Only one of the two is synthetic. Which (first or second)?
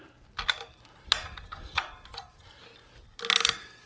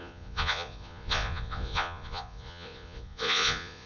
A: second